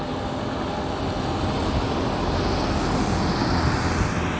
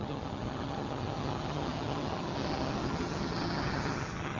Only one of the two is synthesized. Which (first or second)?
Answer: second